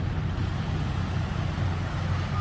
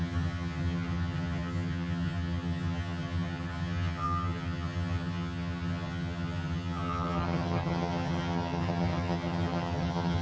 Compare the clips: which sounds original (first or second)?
first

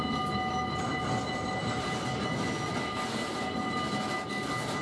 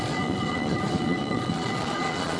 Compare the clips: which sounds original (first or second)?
first